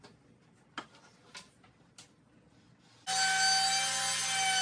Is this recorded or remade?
recorded